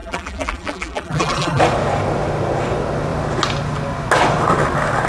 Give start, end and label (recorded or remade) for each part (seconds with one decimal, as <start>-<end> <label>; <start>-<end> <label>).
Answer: 0.0-1.6 remade; 1.6-5.1 recorded

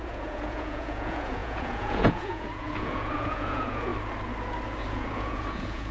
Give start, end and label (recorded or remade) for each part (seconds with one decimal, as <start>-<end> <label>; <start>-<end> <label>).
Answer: 0.0-3.9 remade; 3.9-4.8 recorded; 4.8-5.9 remade

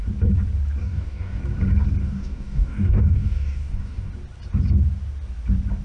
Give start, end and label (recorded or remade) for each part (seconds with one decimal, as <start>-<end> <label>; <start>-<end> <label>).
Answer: 0.0-0.8 recorded; 0.8-1.4 remade; 1.4-2.0 recorded; 2.0-4.1 remade; 4.1-5.8 recorded

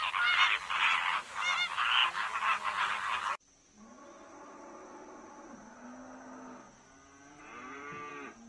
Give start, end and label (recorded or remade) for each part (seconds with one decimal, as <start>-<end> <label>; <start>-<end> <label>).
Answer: 0.0-7.3 recorded; 7.3-8.1 remade; 8.1-8.5 recorded

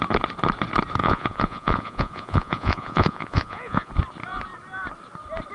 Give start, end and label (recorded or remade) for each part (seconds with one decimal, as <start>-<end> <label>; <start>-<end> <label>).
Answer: 0.0-1.0 recorded; 1.0-3.9 remade; 3.9-5.5 recorded

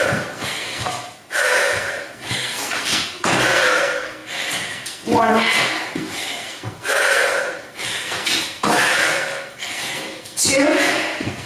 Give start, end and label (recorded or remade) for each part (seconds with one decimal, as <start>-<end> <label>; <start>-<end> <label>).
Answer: 0.0-11.5 remade